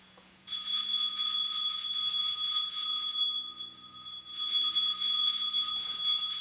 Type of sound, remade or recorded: remade